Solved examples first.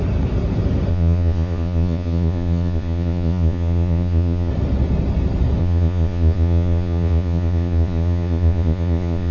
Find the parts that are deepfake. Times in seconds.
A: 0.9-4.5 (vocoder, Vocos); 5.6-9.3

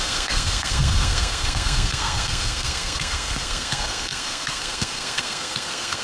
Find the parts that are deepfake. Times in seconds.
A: 0.0-6.0 (codec, SNAC)

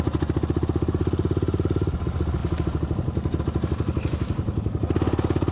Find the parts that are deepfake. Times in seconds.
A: none

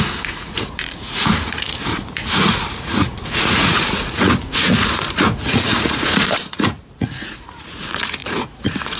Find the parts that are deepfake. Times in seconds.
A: 0.0-9.0 (vocoder, Vocos)

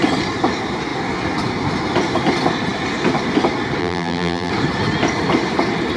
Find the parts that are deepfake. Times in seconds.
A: 3.8-4.5 (vocoder, BigVGAN v2)

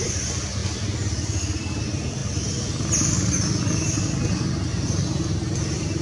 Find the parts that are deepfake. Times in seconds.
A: none